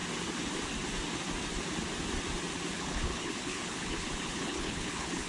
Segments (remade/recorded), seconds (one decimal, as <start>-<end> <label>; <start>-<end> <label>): 0.0-2.7 recorded; 2.7-5.3 remade